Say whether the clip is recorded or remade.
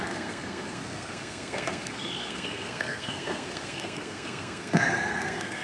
remade